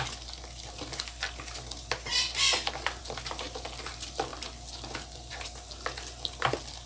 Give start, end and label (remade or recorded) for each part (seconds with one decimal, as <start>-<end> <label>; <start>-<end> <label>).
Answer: 0.0-6.9 recorded